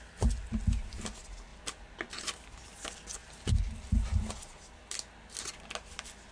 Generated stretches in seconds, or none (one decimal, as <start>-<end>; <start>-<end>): 3.2-4.4